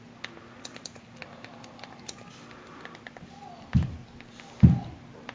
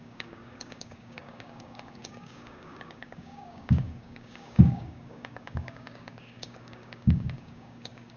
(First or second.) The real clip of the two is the first